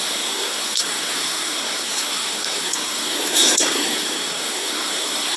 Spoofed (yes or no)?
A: yes